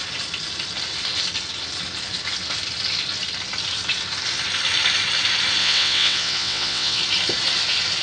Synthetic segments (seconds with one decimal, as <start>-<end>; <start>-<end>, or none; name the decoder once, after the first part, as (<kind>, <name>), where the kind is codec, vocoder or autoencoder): 5.6-7.0 (vocoder, WaveNeXt)